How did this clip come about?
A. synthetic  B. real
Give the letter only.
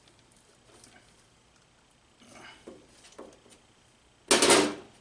B